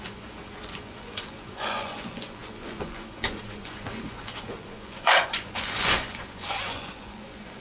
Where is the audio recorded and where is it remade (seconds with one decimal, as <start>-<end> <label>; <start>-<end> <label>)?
0.0-7.6 remade